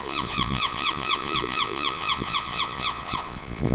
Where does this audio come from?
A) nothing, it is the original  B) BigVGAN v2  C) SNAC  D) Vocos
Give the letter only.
D